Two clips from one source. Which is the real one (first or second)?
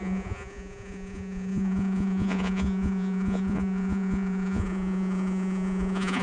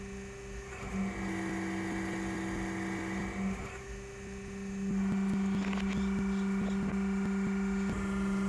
second